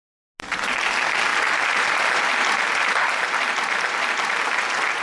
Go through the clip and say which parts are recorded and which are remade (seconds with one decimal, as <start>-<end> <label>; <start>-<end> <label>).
0.0-5.0 recorded